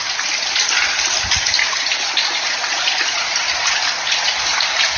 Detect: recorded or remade recorded